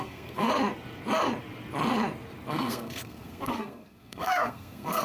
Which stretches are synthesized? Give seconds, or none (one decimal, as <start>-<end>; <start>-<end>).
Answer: 0.0-0.5; 2.5-5.0